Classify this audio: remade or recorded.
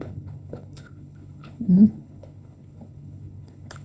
remade